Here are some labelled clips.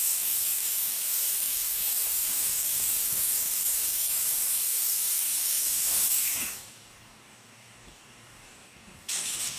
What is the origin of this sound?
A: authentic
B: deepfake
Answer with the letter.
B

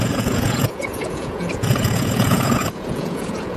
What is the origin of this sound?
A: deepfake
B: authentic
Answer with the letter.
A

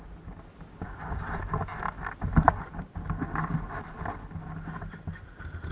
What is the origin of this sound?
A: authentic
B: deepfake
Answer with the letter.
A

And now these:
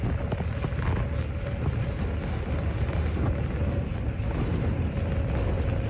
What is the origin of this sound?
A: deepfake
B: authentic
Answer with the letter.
B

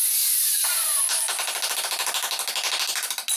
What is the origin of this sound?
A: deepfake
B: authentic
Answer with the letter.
B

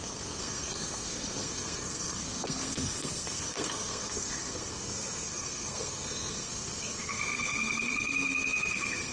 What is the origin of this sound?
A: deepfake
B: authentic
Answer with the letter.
A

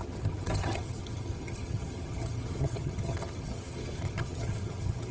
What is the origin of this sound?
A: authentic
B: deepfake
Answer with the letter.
B